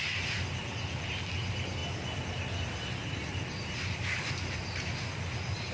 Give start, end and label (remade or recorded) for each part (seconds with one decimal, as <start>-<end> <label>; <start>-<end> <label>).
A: 0.0-5.7 recorded